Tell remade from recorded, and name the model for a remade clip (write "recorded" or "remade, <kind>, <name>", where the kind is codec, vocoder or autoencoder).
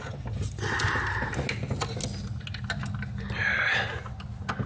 recorded